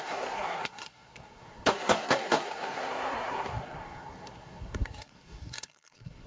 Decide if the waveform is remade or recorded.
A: remade